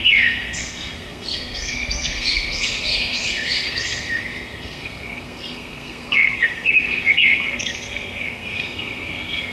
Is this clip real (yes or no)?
no